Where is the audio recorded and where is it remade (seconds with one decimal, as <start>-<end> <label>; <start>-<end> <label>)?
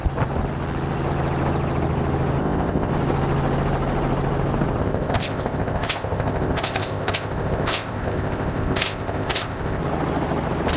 0.0-2.4 recorded; 2.4-2.9 remade; 2.9-4.8 recorded; 4.8-9.8 remade; 9.8-10.8 recorded